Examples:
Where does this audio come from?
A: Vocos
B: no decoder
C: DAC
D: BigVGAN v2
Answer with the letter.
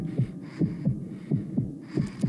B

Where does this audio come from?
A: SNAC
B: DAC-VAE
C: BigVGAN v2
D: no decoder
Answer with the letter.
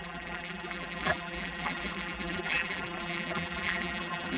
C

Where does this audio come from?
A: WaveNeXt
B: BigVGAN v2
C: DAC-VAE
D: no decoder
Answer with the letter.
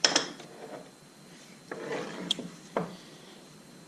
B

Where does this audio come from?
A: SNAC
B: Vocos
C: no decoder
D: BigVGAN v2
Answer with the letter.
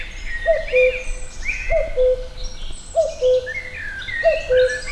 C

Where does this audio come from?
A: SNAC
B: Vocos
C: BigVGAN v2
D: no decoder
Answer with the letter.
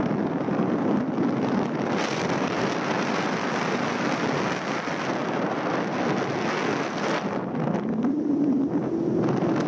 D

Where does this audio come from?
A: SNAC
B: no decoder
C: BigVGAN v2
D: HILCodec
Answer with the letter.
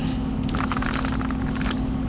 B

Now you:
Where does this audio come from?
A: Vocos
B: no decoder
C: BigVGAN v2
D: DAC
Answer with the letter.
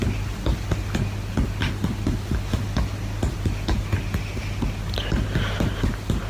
B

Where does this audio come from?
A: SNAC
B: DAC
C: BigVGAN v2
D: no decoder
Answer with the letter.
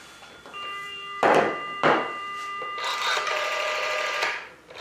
C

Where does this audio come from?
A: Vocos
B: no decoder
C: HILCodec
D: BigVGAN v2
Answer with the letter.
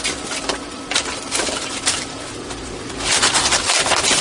B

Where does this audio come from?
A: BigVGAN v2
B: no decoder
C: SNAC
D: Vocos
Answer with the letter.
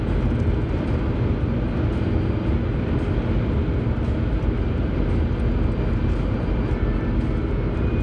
B